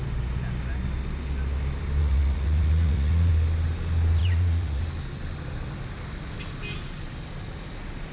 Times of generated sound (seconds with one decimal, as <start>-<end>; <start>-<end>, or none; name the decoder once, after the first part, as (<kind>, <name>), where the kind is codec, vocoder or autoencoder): 2.0-3.3 (vocoder, Vocos); 4.2-4.8

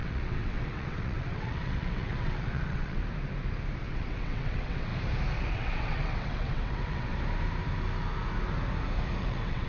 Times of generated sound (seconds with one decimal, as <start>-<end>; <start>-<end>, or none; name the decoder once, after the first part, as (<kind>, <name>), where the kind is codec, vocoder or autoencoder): 0.0-3.0 (vocoder, WaveNeXt); 3.8-4.9; 5.5-7.1; 9.2-9.7

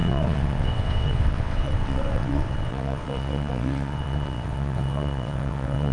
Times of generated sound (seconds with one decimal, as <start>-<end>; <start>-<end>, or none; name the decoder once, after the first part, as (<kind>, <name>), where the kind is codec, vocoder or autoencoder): 0.0-5.9 (vocoder, WaveNeXt)

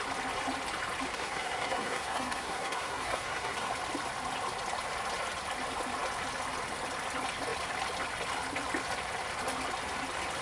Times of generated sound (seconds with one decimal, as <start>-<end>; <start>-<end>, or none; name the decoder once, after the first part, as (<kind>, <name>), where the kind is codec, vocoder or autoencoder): 1.1-3.7 (codec, SNAC)

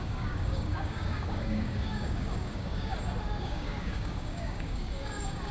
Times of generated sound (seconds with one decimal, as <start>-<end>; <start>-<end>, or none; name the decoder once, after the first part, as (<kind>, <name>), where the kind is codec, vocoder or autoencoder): 0.0-2.9 (codec, DAC); 3.4-5.5

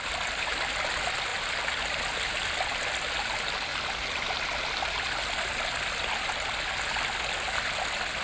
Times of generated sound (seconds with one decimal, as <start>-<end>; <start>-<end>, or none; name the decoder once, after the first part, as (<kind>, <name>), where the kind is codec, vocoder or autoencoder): none

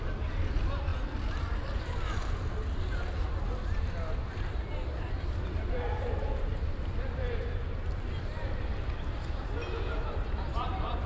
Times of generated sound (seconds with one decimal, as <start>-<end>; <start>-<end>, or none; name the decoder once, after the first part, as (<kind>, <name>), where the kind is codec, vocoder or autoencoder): none

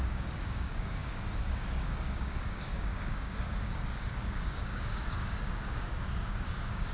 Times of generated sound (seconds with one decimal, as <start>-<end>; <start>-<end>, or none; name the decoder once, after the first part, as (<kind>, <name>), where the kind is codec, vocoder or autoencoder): 0.0-6.9 (codec, DAC)